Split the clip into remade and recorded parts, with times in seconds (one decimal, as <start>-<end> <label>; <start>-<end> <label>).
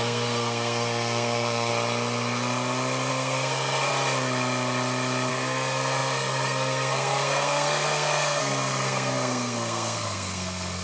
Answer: 0.0-1.7 remade; 1.7-3.1 recorded; 3.1-3.9 remade; 3.9-5.3 recorded; 5.3-10.8 remade